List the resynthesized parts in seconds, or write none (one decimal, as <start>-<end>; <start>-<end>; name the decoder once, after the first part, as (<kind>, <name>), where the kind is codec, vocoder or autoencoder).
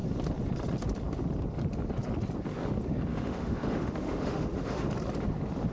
3.1-4.9 (autoencoder, DAC-VAE)